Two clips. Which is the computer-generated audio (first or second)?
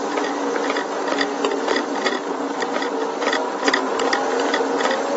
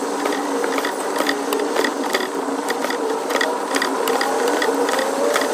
second